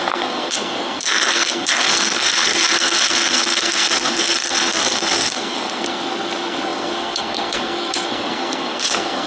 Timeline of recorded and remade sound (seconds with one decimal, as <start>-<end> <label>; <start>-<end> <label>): 0.0-9.3 remade